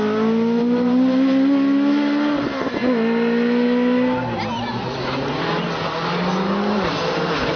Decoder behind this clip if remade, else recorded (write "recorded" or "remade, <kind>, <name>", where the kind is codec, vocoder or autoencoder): recorded